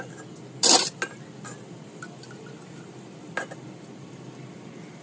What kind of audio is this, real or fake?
real